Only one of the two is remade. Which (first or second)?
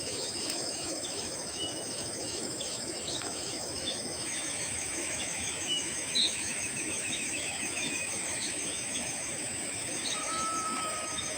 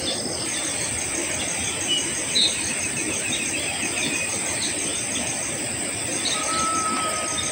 first